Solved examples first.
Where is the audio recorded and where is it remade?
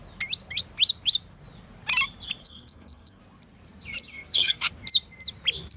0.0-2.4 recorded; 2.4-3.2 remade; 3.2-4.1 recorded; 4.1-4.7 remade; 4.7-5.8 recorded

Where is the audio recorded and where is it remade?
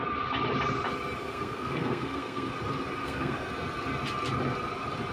0.0-1.2 recorded; 1.2-2.5 remade; 2.5-3.0 recorded; 3.0-3.5 remade; 3.5-5.1 recorded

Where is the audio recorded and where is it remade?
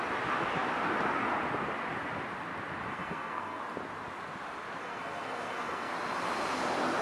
0.0-2.9 recorded; 2.9-3.6 remade; 3.6-4.8 recorded; 4.8-5.9 remade; 5.9-7.0 recorded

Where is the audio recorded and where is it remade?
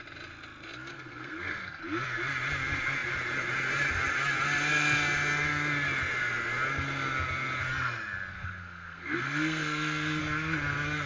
0.0-0.9 recorded; 0.9-1.8 remade; 1.8-8.3 recorded; 8.3-10.2 remade; 10.2-11.1 recorded